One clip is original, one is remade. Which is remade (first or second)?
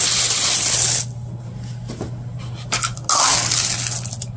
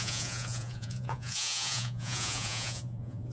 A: second